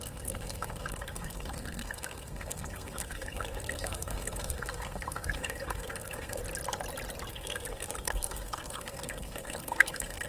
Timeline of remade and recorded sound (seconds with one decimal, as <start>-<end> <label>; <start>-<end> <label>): 0.0-6.4 remade; 6.4-7.3 recorded; 7.3-10.3 remade